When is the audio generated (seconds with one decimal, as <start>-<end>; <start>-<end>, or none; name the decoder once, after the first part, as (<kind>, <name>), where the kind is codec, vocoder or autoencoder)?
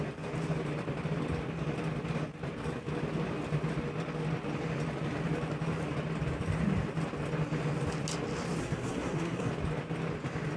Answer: 8.6-9.5 (codec, SNAC)